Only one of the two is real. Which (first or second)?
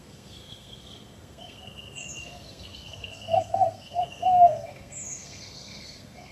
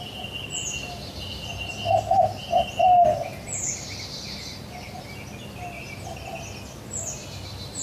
second